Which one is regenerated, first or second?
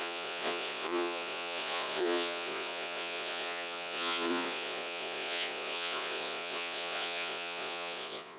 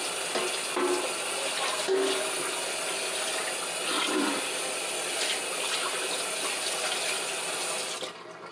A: first